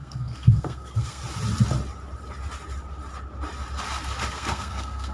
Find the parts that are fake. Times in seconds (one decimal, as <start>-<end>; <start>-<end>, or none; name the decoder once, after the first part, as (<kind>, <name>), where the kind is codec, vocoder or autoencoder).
0.0-1.2 (codec, SNAC); 4.3-5.1